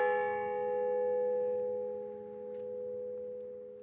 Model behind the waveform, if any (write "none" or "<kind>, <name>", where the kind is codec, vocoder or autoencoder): none